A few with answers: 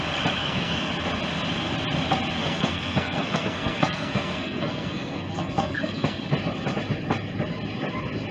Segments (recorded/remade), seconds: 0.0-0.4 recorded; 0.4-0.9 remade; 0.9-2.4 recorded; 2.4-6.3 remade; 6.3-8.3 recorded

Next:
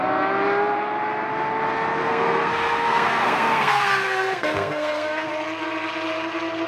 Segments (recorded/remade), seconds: 0.0-2.0 recorded; 2.0-5.3 remade; 5.3-6.7 recorded

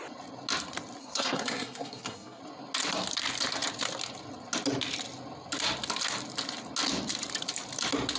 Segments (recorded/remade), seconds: 0.0-1.0 recorded; 1.0-2.4 remade; 2.4-8.2 recorded

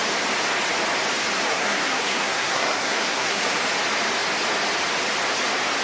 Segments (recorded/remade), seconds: 0.0-1.5 recorded; 1.5-3.6 remade; 3.6-5.8 recorded